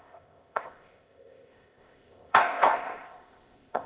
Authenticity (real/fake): fake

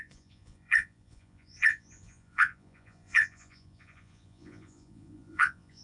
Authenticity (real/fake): fake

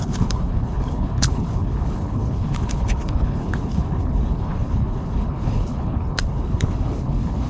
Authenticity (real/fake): fake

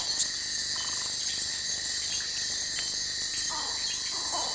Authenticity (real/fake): real